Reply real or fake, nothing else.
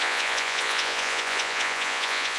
fake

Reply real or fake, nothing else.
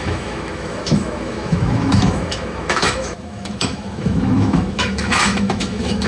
fake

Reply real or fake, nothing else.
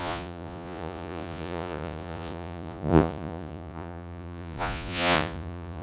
fake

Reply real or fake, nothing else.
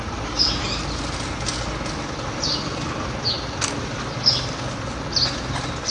real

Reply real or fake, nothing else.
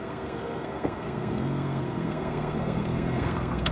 fake